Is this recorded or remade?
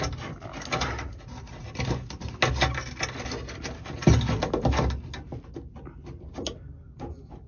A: recorded